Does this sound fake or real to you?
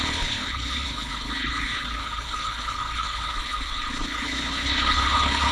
fake